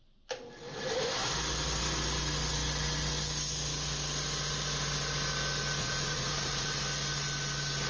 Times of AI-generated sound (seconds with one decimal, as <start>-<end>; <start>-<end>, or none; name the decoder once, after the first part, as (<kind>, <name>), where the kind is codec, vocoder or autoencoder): 5.8-6.7 (vocoder, Vocos)

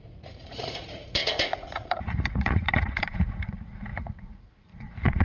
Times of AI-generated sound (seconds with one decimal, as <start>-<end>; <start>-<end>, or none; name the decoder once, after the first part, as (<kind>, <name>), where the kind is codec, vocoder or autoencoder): 0.0-5.2 (vocoder, Vocos)

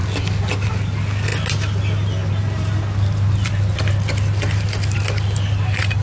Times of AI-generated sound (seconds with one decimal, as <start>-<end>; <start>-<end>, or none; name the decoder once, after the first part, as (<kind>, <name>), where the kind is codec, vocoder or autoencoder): none

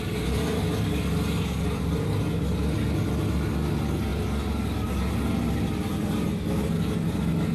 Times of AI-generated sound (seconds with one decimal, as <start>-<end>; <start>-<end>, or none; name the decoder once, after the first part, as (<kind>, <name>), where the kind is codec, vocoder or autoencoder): none

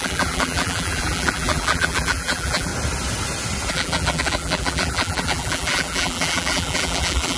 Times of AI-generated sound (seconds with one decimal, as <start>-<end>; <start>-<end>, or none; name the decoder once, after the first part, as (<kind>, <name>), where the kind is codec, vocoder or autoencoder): 0.0-2.7 (vocoder, BigVGAN v2); 3.7-7.4

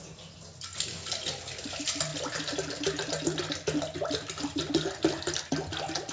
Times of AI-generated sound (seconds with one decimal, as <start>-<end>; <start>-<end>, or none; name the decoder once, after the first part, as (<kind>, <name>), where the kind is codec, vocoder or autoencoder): none

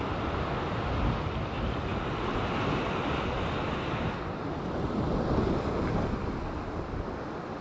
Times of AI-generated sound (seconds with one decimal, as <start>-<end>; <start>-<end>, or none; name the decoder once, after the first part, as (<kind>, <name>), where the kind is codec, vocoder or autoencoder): none

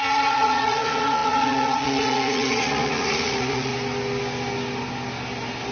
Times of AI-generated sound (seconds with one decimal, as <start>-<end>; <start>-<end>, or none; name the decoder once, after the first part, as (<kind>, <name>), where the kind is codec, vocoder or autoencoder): 0.0-3.7 (vocoder, Vocos)